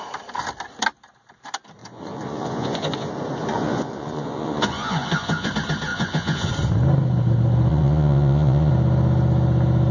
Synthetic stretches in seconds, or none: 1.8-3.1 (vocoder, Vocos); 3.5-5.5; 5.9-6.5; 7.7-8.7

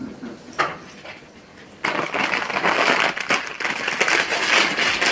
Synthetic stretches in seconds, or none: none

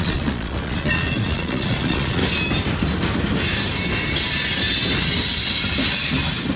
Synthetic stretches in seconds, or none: 0.0-2.2 (vocoder, Vocos)

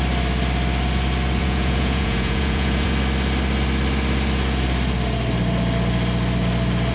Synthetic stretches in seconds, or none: 1.4-2.9 (vocoder, Vocos)

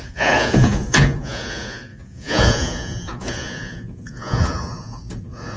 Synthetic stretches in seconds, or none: 0.0-5.6 (vocoder, Vocos)